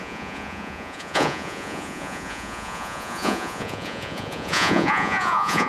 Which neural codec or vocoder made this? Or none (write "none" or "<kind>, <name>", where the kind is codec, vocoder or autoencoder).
vocoder, Vocos